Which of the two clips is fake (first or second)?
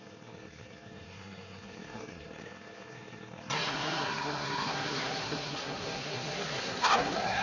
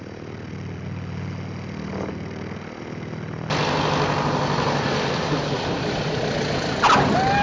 first